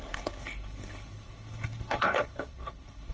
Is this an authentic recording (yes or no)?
no